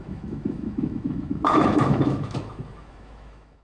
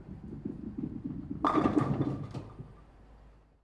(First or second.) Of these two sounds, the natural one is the second